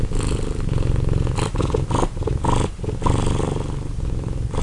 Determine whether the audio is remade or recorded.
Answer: recorded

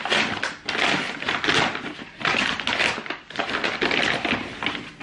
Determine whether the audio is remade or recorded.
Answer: recorded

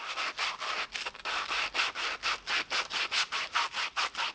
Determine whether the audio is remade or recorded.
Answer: recorded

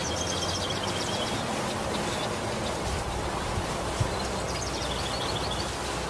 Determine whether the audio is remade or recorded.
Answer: recorded